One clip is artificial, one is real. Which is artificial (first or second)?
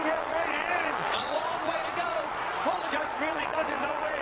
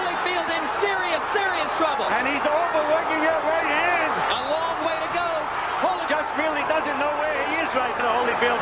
first